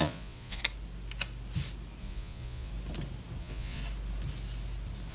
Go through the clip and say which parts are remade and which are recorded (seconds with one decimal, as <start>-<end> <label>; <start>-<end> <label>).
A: 0.0-0.6 remade; 0.6-2.0 recorded; 2.0-2.7 remade; 2.7-3.4 recorded; 3.4-3.8 remade; 3.8-5.1 recorded